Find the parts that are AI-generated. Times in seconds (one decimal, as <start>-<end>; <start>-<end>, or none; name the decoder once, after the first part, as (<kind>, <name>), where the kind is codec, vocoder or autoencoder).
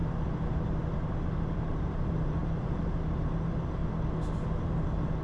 1.1-3.8 (vocoder, BigVGAN v2)